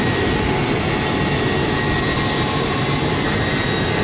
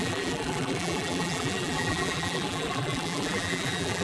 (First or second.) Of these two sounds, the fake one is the second